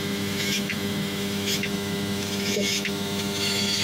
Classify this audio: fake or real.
fake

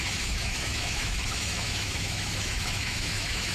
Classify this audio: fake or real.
fake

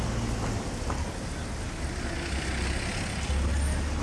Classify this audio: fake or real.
real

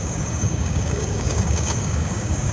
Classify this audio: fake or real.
fake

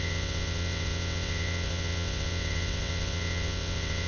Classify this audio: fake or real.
fake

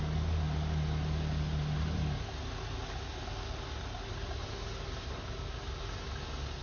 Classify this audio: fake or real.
real